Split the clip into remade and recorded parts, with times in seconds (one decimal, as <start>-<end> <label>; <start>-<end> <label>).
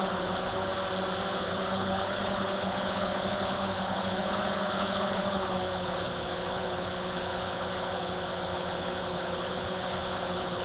0.0-0.7 remade; 0.7-1.3 recorded; 1.3-10.6 remade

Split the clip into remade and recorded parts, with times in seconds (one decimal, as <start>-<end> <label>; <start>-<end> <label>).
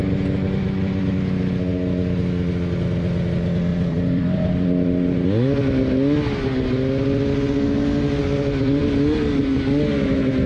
0.0-3.7 recorded; 3.7-4.5 remade; 4.5-8.2 recorded; 8.2-8.8 remade; 8.8-10.5 recorded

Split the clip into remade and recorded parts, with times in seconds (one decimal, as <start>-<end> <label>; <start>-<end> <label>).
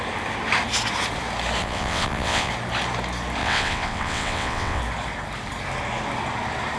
0.0-1.6 recorded; 1.6-2.5 remade; 2.5-3.4 recorded; 3.4-4.8 remade; 4.8-6.8 recorded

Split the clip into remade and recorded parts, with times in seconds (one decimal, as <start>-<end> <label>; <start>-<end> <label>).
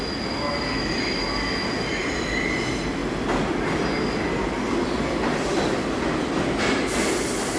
0.0-7.6 recorded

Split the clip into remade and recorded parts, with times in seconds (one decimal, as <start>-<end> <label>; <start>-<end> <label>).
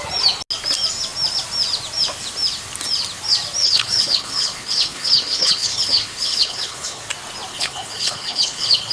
0.0-3.6 recorded; 3.6-7.0 remade; 7.0-7.5 recorded; 7.5-8.9 remade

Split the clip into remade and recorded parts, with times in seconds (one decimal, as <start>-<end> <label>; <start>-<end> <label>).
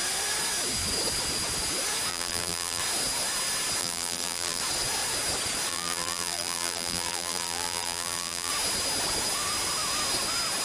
0.0-2.1 recorded; 2.1-2.8 remade; 2.8-3.8 recorded; 3.8-4.6 remade; 4.6-5.7 recorded; 5.7-8.5 remade; 8.5-10.6 recorded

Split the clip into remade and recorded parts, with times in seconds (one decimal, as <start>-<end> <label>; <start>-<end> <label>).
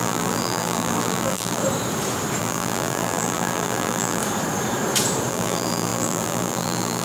0.0-1.6 remade; 1.6-2.4 recorded; 2.4-4.2 remade; 4.2-5.3 recorded; 5.3-7.0 remade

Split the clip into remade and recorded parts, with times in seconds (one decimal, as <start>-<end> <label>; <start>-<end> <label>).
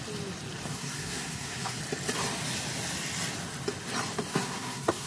0.0-0.7 recorded; 0.7-1.8 remade; 1.8-4.3 recorded; 4.3-5.1 remade